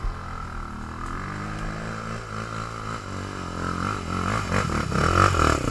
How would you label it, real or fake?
real